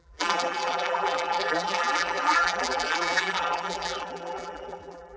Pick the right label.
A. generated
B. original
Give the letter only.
A